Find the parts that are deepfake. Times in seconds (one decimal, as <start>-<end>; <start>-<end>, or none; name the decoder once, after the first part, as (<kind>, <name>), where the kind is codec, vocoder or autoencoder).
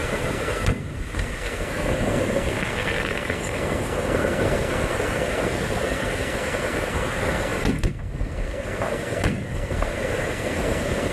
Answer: 0.0-11.1 (codec, SNAC)